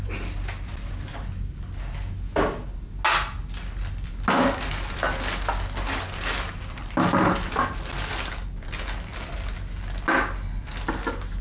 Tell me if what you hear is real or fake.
real